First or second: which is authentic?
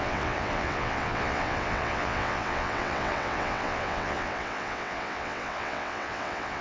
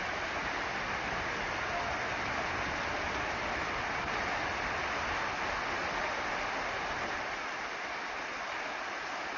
second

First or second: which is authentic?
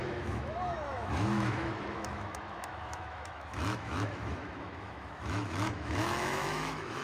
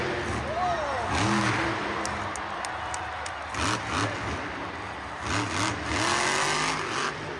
second